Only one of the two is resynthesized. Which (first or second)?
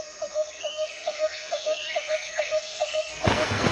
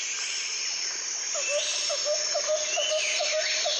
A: first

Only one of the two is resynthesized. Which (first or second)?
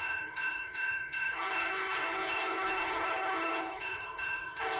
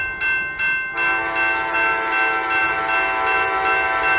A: first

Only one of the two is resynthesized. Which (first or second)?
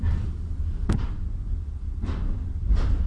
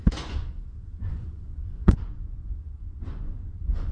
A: second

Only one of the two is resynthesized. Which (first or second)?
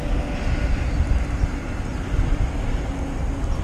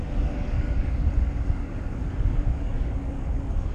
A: second